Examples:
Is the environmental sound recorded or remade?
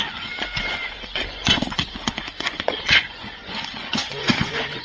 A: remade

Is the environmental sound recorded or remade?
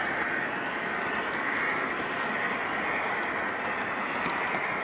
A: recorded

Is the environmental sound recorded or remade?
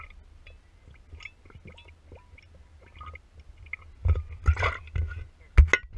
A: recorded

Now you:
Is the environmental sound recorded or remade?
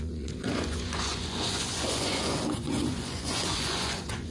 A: remade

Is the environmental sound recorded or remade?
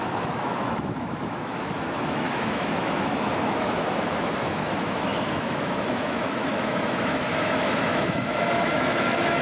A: remade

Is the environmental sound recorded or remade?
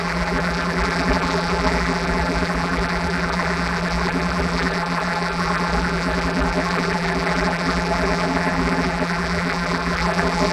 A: remade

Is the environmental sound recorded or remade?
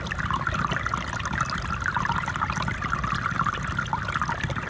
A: recorded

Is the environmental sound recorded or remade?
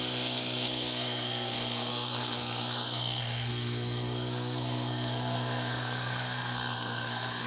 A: remade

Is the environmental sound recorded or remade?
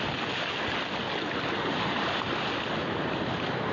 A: recorded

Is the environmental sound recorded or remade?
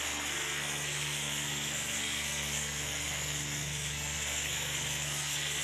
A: remade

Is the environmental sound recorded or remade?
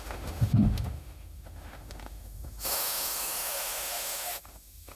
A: remade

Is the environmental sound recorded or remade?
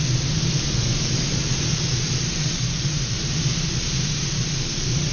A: remade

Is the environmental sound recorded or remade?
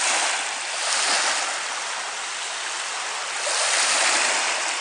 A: recorded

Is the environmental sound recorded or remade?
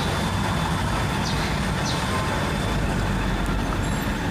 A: recorded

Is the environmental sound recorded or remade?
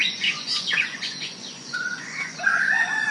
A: remade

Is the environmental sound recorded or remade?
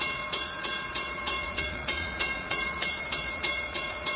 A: remade